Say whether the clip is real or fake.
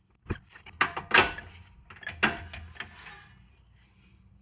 real